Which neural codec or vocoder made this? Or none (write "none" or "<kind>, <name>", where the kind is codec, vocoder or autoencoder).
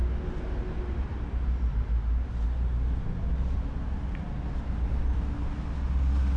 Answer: none